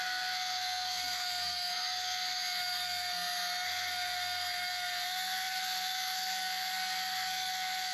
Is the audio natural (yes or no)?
no